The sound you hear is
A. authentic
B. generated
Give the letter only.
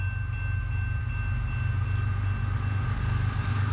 A